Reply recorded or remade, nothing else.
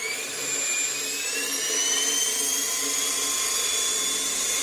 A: recorded